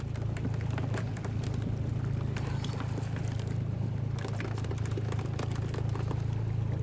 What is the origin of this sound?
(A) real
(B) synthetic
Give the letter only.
A